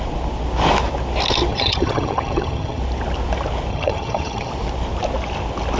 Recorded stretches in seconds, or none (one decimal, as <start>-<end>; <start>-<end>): 0.0-1.5; 2.8-3.7; 4.5-5.8